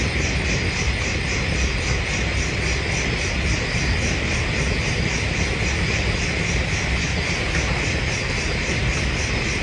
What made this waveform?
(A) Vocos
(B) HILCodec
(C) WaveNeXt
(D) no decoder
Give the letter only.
D